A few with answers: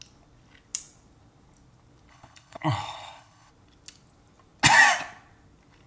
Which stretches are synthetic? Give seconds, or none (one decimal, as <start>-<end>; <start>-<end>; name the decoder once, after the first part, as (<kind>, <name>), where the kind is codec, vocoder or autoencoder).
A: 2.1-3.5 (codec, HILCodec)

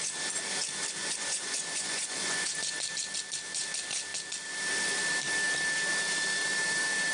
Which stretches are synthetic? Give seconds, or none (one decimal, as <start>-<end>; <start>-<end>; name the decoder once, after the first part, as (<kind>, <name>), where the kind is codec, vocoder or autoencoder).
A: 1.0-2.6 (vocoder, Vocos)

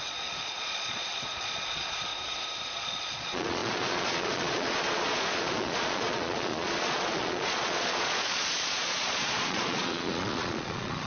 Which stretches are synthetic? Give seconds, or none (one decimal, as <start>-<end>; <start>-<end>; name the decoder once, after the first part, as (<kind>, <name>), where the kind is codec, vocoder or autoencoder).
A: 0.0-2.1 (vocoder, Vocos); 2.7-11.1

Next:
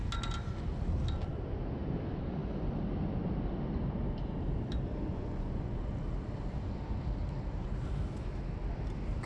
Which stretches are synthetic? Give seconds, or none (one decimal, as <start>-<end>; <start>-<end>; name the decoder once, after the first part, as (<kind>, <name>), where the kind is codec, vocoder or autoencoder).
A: 5.1-5.9 (vocoder, Vocos)